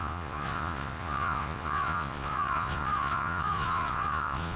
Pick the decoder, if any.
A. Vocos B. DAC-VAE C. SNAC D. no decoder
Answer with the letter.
A